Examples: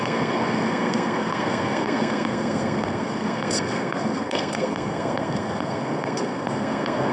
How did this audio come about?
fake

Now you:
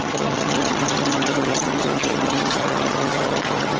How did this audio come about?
fake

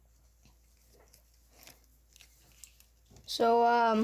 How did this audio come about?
real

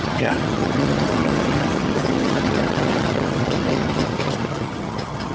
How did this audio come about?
fake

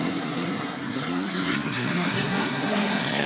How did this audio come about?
fake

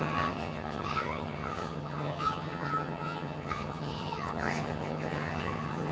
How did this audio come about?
fake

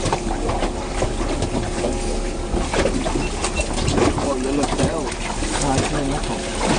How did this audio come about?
real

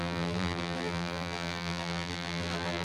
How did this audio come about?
fake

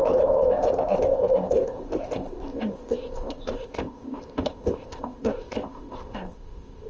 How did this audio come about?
fake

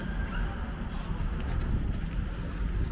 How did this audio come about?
real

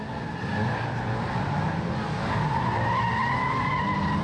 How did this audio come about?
real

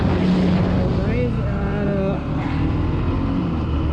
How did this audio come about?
real